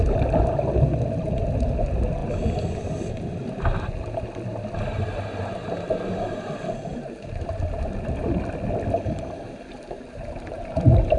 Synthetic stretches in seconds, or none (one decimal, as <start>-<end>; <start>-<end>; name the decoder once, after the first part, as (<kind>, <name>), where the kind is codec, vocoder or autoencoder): 6.9-8.3 (vocoder, BigVGAN v2); 9.7-11.2